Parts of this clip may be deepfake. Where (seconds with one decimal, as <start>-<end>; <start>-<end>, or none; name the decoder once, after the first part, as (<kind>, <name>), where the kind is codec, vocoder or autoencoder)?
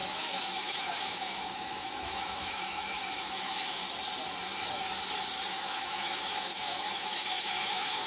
0.0-3.8 (autoencoder, DAC-VAE); 5.5-8.1